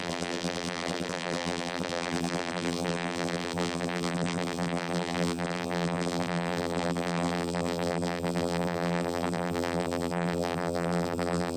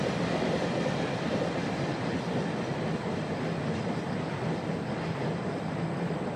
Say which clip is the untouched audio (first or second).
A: second